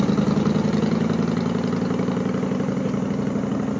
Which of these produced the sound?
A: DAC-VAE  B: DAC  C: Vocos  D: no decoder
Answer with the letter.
D